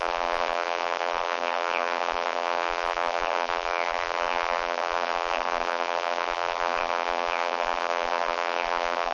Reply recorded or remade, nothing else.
remade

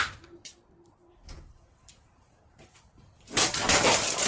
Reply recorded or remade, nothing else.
remade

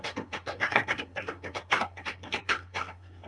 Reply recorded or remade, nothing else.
remade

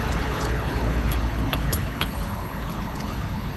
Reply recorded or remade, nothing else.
remade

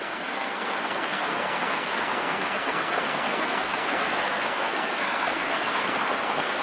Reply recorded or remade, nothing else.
remade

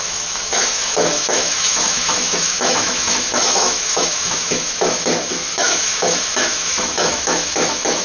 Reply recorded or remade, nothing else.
remade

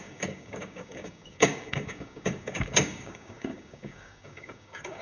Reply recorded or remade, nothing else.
remade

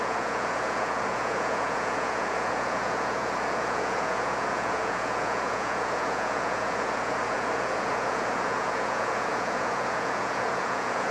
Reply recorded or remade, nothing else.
remade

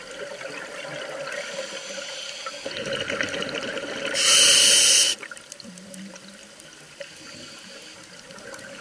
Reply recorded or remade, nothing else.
recorded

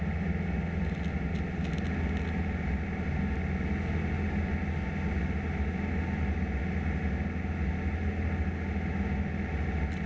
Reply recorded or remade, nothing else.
recorded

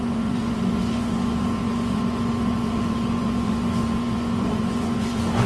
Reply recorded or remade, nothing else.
remade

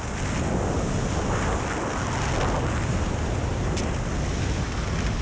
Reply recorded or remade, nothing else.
recorded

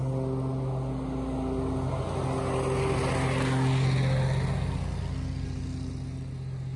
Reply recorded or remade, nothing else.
recorded